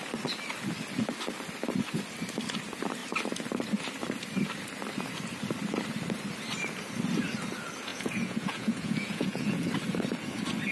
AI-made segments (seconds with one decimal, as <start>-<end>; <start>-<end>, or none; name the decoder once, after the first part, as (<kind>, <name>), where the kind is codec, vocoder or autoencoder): 7.9-9.7 (vocoder, Vocos)